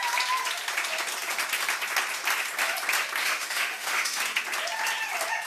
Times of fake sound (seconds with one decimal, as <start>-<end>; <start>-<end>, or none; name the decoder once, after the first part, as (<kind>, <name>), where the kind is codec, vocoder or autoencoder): 3.2-4.2 (autoencoder, DAC-VAE)